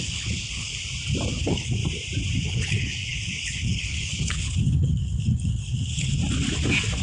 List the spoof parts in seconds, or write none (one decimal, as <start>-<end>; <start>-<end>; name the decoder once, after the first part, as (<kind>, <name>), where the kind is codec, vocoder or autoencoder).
0.0-0.7 (codec, HILCodec); 1.3-1.8; 2.4-6.2